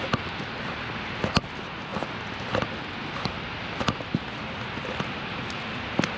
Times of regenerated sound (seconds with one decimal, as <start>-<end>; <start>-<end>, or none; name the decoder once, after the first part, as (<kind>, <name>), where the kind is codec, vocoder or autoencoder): none